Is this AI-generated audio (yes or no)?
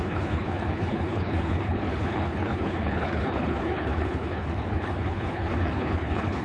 yes